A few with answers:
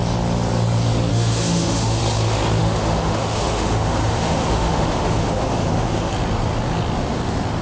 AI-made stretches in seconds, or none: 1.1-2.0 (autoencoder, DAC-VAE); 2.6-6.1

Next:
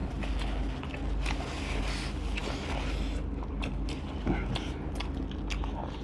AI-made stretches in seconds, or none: none

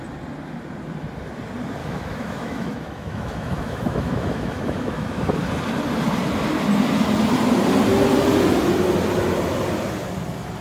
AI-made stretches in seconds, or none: 1.8-5.5 (autoencoder, DAC-VAE)

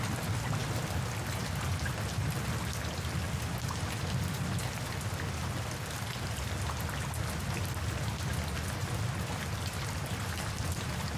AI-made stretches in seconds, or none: none